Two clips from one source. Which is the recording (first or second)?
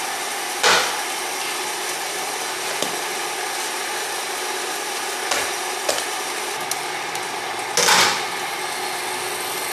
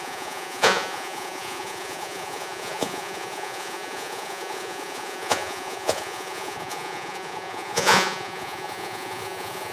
first